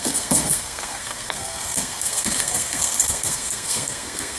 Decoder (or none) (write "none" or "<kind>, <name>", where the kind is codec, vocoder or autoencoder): codec, SNAC